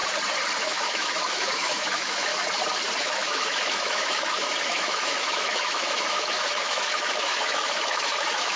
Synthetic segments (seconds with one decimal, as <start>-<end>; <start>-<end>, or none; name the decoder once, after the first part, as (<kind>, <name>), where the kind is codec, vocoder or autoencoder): 0.6-2.3 (autoencoder, DAC-VAE); 3.0-8.6